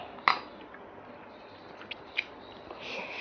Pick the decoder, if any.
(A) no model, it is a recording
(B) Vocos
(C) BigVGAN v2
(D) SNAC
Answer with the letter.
A